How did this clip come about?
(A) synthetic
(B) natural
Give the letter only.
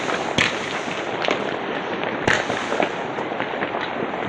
B